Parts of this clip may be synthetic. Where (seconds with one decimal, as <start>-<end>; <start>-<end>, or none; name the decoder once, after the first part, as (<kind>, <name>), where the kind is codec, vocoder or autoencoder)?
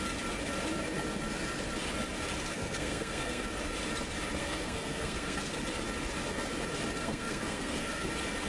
2.5-3.4 (codec, SNAC); 4.4-5.4; 7.0-8.1